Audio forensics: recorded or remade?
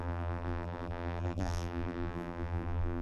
remade